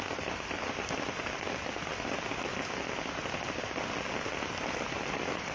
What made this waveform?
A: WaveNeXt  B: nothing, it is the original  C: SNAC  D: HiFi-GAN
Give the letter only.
B